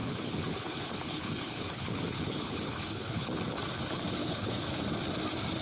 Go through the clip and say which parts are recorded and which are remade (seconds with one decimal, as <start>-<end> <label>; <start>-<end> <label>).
0.0-3.4 remade; 3.4-4.2 recorded; 4.2-4.8 remade; 4.8-5.6 recorded